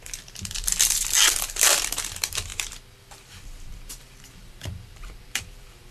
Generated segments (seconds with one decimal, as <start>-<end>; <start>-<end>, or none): 0.0-5.9